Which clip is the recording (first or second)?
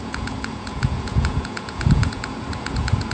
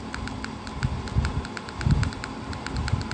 second